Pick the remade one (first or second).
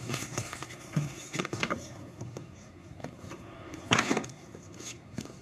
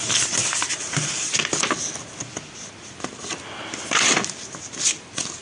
first